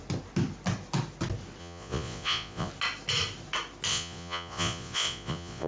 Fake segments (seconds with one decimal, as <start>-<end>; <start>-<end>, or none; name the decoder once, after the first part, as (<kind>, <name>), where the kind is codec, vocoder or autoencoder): 1.6-2.7 (vocoder, Vocos); 3.9-5.7